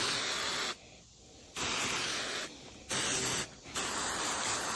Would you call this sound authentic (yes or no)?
yes